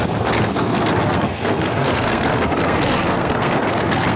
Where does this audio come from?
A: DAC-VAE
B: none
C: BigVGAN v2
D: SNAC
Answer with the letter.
D